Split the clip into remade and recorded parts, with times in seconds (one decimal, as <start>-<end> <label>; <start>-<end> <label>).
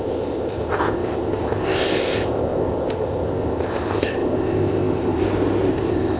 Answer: 0.0-5.2 remade; 5.2-5.7 recorded; 5.7-6.2 remade